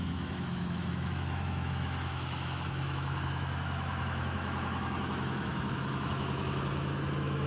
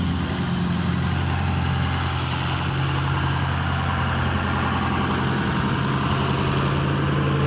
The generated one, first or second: first